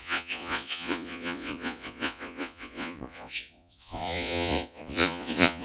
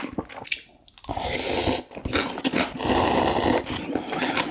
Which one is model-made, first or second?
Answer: first